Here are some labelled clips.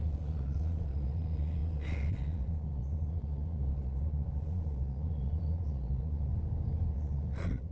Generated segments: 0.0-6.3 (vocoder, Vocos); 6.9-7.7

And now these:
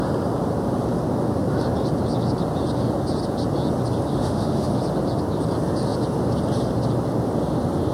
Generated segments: 4.1-4.7 (autoencoder, DAC-VAE)

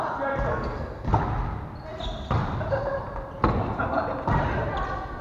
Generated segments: 0.5-1.1 (codec, SNAC)

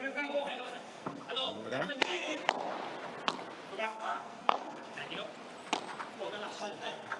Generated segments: 0.0-2.3 (codec, SNAC); 3.8-5.0; 6.6-7.2

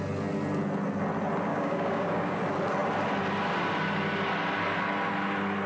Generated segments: 1.5-2.4 (codec, DAC)

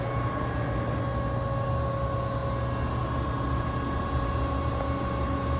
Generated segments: none

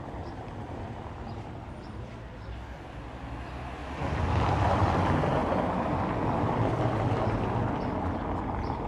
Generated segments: none

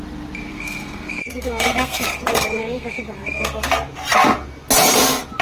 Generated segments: 0.5-3.7 (codec, SNAC)